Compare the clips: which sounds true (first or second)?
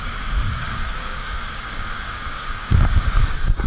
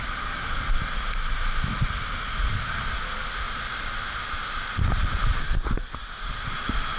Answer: second